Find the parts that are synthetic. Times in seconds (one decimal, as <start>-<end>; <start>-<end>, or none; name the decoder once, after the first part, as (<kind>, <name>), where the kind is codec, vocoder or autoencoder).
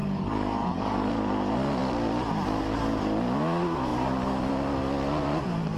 0.0-1.1 (codec, DAC)